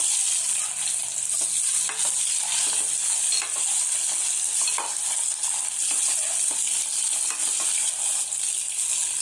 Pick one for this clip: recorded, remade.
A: recorded